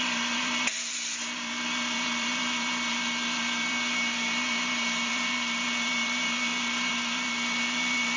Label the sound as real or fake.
fake